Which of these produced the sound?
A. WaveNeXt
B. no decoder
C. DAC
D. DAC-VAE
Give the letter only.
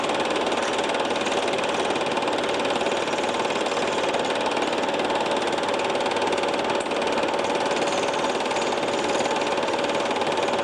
B